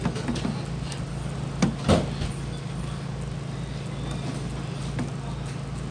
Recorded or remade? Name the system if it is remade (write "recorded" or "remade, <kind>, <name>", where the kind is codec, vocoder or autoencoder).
recorded